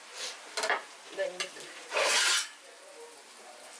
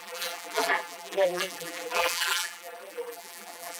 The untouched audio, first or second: first